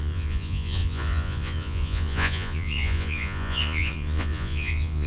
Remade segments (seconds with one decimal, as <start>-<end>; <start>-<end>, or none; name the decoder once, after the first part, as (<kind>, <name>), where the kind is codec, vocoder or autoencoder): 0.0-5.1 (vocoder, Vocos)